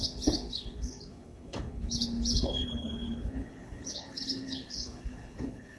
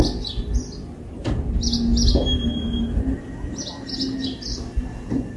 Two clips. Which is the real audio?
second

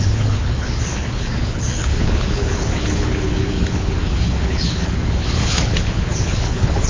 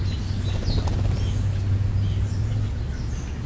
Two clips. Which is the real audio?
second